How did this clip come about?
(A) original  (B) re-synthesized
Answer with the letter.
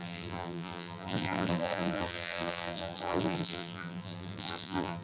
B